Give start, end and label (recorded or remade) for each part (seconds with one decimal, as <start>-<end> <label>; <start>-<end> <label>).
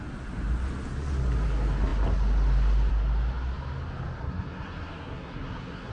0.0-4.2 recorded; 4.2-5.9 remade